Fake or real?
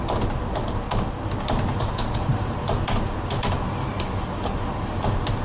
real